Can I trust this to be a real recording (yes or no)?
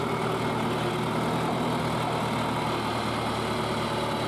yes